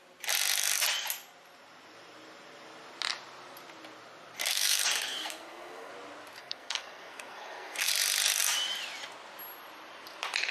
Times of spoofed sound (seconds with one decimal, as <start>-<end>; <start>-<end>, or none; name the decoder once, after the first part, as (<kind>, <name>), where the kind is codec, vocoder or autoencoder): 4.4-5.9 (codec, SNAC); 6.4-7.9